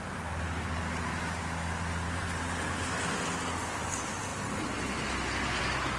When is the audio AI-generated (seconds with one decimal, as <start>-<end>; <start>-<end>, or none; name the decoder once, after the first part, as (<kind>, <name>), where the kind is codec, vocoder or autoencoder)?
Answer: none